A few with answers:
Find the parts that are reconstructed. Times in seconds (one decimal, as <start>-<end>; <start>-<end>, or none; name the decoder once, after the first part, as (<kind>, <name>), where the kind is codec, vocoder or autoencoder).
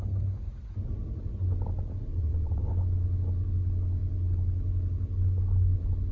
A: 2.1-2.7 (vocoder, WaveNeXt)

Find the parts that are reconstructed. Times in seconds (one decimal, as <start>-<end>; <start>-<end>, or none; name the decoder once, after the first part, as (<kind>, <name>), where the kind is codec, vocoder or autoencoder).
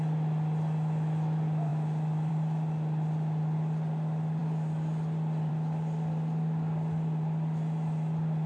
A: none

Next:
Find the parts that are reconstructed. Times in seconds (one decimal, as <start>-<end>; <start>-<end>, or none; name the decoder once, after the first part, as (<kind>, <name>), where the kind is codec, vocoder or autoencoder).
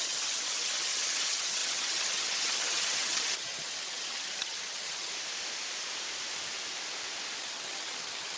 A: 0.0-5.1 (vocoder, HiFi-GAN); 7.4-8.4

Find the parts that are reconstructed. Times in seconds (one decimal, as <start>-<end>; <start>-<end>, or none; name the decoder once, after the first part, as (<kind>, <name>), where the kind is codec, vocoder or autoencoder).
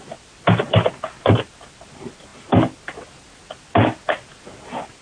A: none